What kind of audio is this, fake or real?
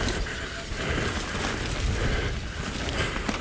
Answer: real